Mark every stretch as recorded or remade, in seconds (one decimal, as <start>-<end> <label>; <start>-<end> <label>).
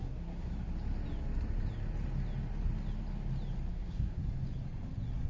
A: 0.0-0.5 remade; 0.5-3.7 recorded; 3.7-4.2 remade; 4.2-5.3 recorded